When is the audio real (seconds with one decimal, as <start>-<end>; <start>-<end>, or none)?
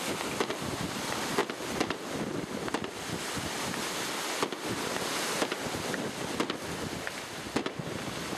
0.0-8.4